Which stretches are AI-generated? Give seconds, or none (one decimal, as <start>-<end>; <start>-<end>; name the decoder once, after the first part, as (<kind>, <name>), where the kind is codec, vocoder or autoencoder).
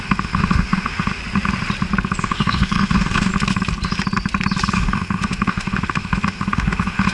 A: 0.0-1.2 (autoencoder, DAC-VAE); 2.2-3.3; 4.7-7.1